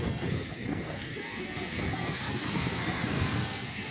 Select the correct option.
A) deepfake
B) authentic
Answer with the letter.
A